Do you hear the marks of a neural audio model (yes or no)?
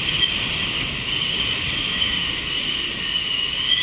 no